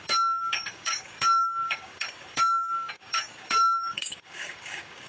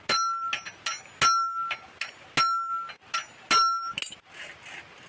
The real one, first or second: second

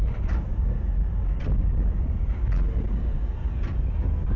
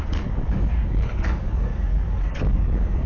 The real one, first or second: first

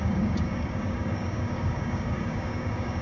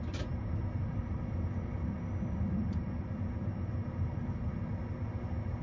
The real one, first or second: second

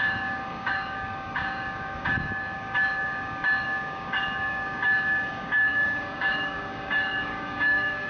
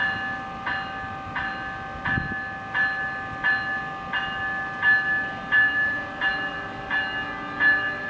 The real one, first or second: second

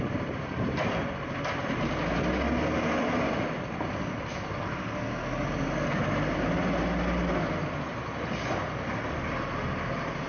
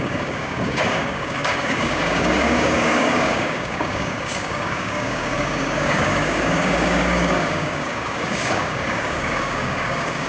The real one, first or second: first